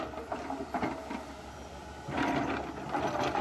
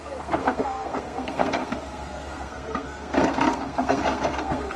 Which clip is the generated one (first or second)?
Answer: second